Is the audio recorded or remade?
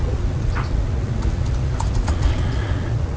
remade